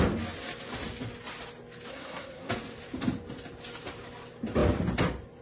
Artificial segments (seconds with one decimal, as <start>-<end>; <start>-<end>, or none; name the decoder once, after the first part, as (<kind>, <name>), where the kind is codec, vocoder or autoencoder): 1.9-2.5 (codec, SNAC)